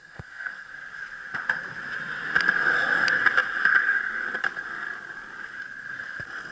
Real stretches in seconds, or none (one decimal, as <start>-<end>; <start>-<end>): 0.7-6.5